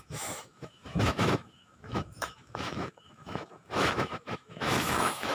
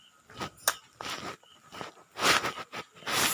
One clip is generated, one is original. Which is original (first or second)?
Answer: second